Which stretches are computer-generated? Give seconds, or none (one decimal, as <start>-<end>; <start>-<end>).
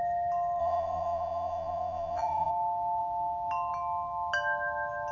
0.6-2.5